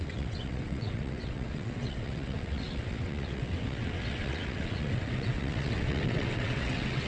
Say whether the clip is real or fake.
fake